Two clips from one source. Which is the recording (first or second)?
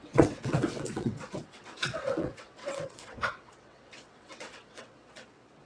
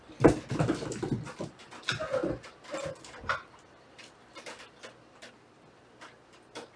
second